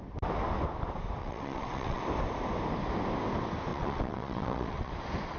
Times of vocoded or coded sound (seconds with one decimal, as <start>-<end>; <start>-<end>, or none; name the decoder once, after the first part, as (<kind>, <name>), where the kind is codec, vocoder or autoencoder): 1.2-2.0 (vocoder, WaveNeXt); 3.7-4.9